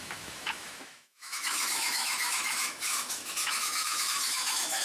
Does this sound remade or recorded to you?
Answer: remade